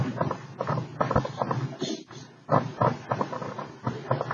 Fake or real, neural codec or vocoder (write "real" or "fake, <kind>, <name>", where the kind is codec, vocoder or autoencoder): real